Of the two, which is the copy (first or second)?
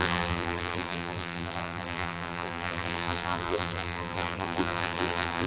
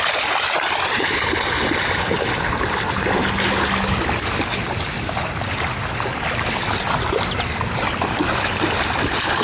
first